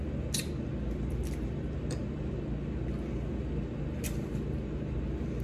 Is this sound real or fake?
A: real